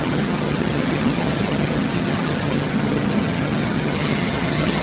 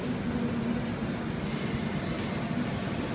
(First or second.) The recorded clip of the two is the second